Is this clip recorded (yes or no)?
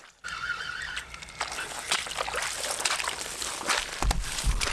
yes